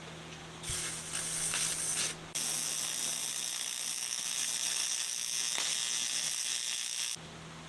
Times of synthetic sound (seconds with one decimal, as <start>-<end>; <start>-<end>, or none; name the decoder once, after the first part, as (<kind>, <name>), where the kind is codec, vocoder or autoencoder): none